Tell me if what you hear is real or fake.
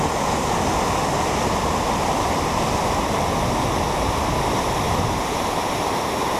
real